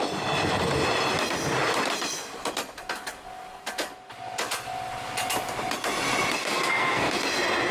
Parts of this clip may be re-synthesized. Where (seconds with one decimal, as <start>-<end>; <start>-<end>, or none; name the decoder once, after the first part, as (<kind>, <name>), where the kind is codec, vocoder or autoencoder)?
6.4-7.2 (codec, SNAC)

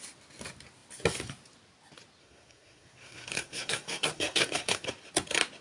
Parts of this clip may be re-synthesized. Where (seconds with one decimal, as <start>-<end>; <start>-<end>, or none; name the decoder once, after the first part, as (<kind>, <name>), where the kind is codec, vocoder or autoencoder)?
2.2-4.9 (codec, SNAC)

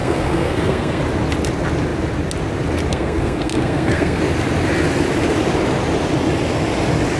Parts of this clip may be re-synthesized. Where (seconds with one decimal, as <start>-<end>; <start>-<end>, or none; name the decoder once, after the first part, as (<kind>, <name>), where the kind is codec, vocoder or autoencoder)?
0.0-1.0 (codec, SNAC); 2.9-4.2

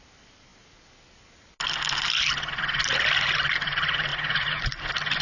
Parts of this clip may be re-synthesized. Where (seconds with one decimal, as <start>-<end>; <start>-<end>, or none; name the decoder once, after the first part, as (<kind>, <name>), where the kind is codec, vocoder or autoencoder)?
none

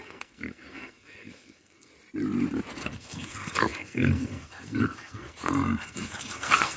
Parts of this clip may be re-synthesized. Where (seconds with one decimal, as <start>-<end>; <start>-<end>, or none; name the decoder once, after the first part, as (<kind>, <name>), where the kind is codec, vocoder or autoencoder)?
0.0-1.9 (codec, SNAC); 2.7-6.8

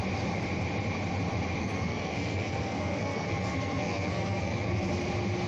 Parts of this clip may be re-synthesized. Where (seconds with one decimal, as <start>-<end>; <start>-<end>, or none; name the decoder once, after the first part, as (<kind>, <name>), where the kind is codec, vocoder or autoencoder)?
1.6-4.9 (codec, SNAC)

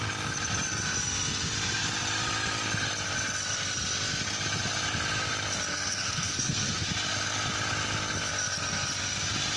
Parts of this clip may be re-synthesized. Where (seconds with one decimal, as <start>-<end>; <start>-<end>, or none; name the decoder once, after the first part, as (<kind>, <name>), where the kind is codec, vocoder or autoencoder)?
5.7-6.9 (codec, SNAC)